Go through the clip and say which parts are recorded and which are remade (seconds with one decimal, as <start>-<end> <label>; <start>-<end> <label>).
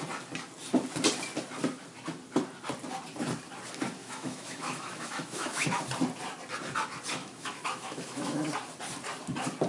0.0-4.0 recorded; 4.0-5.8 remade; 5.8-7.2 recorded; 7.2-8.4 remade; 8.4-9.7 recorded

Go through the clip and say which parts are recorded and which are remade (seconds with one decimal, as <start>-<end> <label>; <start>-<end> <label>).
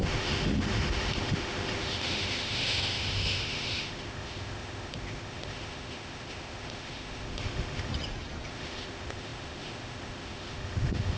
0.0-7.9 remade; 7.9-8.5 recorded; 8.5-11.2 remade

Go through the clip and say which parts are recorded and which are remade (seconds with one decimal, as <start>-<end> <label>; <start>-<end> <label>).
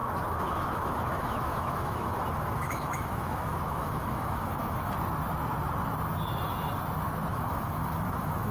0.0-4.9 remade; 4.9-7.3 recorded; 7.3-8.5 remade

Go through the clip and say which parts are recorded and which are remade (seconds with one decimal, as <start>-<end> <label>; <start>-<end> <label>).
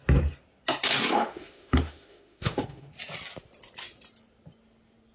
0.0-1.0 recorded; 1.0-2.9 remade; 2.9-5.1 recorded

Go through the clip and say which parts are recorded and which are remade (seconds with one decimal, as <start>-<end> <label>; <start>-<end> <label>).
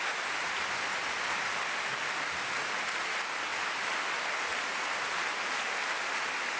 0.0-6.6 recorded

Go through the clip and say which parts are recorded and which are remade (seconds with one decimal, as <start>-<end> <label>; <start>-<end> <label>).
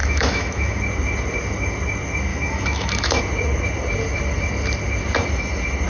0.0-0.8 remade; 0.8-2.3 recorded; 2.3-3.2 remade; 3.2-5.9 recorded